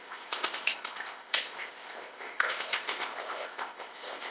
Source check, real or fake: fake